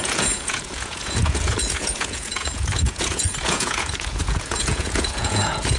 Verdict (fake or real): fake